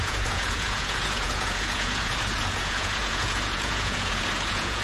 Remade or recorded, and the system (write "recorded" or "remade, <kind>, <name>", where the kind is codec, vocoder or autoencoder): remade, vocoder, Vocos